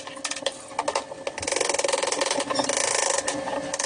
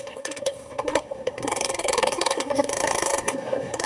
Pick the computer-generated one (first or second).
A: second